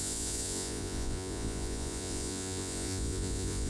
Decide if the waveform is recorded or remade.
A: remade